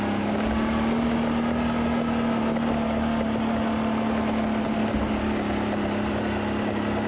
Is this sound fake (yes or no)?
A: no